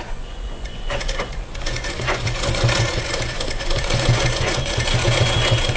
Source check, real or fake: fake